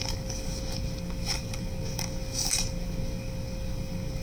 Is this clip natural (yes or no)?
no